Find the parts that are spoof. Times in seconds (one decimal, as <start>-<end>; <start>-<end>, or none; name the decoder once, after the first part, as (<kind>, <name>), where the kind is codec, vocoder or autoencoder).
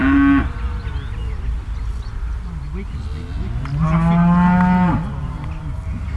none